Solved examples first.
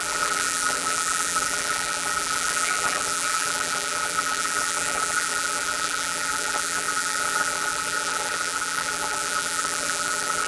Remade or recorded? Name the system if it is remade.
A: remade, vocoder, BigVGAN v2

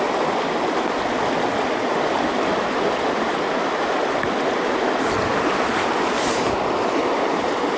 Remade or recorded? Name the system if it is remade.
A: remade, vocoder, BigVGAN v2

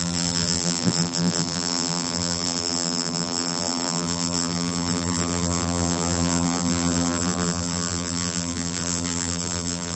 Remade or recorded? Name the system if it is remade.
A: remade, vocoder, BigVGAN v2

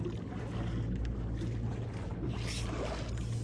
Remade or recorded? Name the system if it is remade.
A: recorded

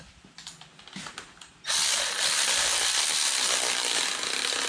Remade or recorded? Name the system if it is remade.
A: recorded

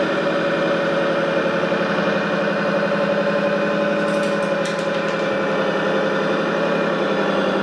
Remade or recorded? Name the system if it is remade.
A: recorded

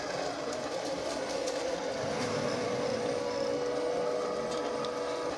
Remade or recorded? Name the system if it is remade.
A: recorded